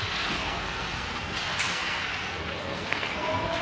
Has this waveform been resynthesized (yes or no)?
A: yes